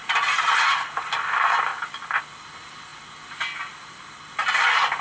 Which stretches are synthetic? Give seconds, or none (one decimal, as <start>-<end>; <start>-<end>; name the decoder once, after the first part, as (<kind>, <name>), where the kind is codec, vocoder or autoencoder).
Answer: none